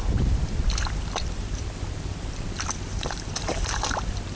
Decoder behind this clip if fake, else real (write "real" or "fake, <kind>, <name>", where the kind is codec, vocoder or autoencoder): fake, vocoder, BigVGAN v2